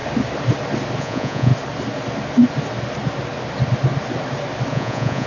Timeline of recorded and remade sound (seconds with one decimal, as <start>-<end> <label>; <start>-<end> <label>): 0.0-1.0 recorded; 1.0-1.5 remade; 1.5-4.7 recorded; 4.7-5.3 remade